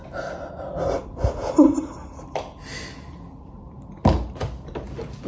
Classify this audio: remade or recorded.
recorded